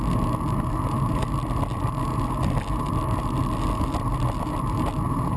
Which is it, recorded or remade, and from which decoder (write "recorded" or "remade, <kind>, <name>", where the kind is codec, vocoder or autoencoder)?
recorded